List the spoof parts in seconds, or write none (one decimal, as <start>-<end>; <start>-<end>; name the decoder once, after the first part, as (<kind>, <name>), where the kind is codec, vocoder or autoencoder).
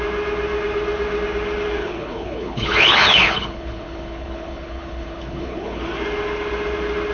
1.8-5.8 (codec, HILCodec)